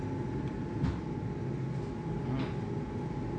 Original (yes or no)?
yes